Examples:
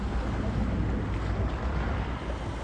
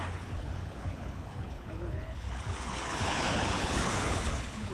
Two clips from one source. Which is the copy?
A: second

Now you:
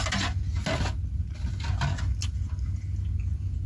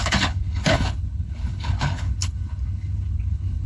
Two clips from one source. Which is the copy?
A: second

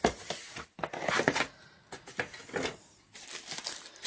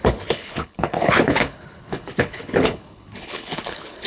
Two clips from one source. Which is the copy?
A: second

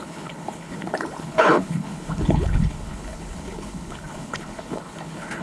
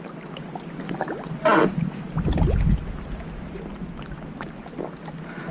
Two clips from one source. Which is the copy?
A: first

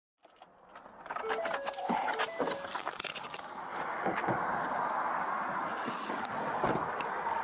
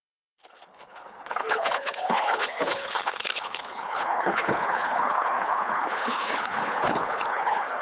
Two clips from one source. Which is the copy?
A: second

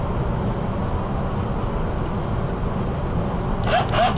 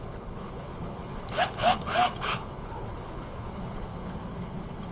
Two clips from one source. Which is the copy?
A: second